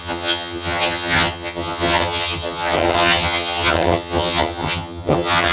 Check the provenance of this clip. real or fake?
fake